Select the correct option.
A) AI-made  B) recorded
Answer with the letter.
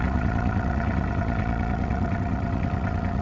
A